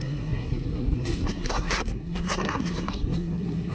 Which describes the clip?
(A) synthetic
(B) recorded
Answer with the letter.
A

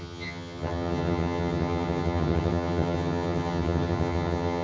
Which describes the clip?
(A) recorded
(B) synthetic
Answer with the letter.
B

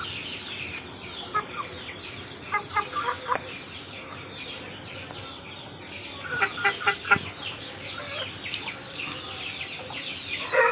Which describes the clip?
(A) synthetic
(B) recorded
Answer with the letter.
B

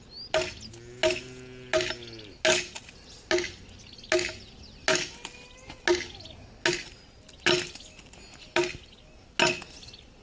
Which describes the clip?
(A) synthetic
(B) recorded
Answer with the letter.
B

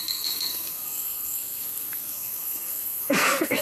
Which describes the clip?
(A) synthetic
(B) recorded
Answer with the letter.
A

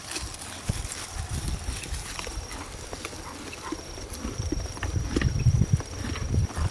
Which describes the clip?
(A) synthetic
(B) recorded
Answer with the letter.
B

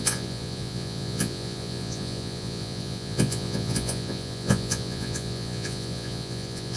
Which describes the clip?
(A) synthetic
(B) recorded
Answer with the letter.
A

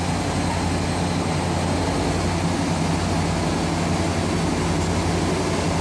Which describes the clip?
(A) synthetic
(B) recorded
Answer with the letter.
B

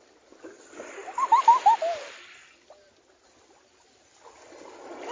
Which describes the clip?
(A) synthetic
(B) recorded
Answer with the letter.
B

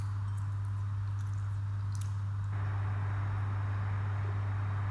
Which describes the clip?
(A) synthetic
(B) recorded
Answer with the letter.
B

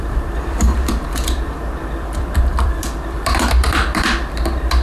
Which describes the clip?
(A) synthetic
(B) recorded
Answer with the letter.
A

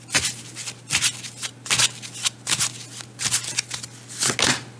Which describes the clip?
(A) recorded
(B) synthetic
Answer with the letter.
A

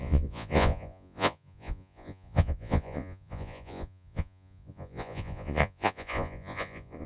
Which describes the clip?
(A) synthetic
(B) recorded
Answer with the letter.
A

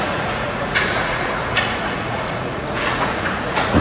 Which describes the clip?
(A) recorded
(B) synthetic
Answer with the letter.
B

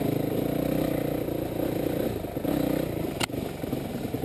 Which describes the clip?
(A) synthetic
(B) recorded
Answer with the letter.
B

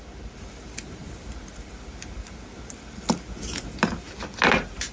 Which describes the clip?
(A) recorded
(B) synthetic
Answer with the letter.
A